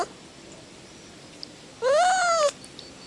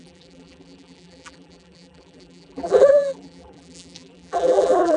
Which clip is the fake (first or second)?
second